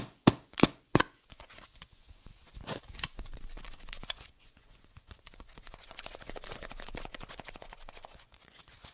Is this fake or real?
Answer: fake